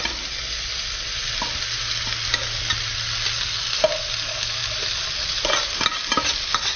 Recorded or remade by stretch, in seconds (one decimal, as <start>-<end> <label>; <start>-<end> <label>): 0.0-6.8 recorded